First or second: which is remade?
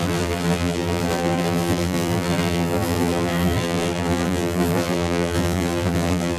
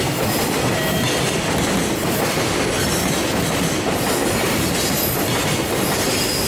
first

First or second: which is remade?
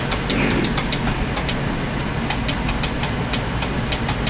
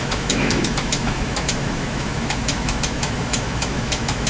second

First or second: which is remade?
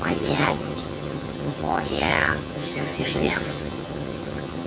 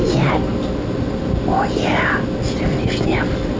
first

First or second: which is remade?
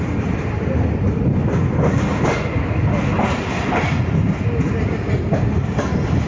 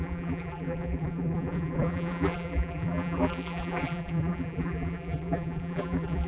second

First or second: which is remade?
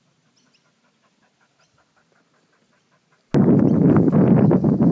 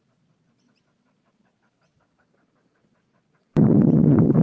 second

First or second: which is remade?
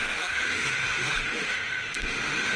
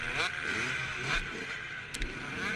first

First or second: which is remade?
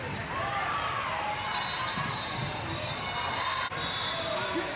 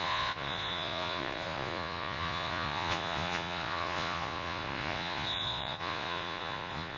second